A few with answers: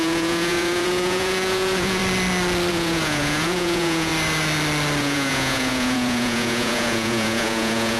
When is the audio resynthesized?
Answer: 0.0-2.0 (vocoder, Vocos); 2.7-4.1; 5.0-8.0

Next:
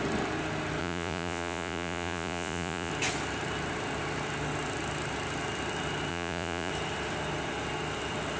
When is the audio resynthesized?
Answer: 0.8-2.9 (vocoder, Vocos); 6.1-6.7

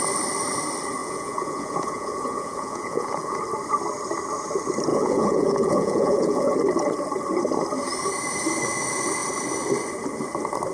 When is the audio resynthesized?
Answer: 1.0-3.4 (vocoder, Vocos); 4.9-6.5

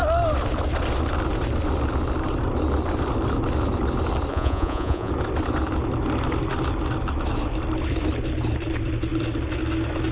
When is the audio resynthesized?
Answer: 4.3-5.1 (vocoder, Vocos)